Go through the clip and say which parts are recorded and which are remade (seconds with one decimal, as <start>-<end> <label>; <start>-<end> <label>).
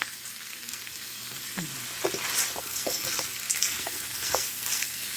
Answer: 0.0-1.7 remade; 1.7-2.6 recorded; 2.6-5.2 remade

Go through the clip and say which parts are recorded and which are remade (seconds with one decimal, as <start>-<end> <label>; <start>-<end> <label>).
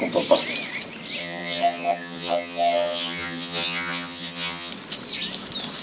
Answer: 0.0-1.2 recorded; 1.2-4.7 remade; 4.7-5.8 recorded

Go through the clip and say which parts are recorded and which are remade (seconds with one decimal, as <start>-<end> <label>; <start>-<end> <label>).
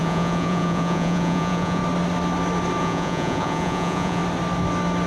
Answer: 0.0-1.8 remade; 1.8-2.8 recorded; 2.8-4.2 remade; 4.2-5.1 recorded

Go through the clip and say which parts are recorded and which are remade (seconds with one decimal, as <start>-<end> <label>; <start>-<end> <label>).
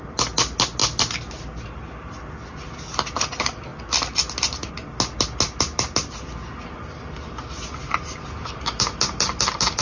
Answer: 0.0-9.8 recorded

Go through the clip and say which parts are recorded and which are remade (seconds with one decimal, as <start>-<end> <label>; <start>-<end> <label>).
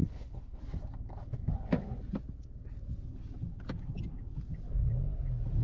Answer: 0.0-0.6 remade; 0.6-5.6 recorded